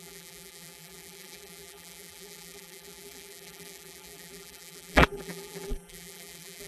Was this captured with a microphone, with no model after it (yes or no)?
no